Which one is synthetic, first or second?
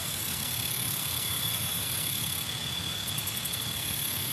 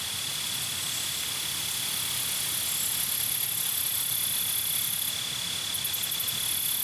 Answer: first